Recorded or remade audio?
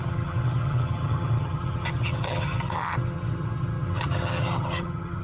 remade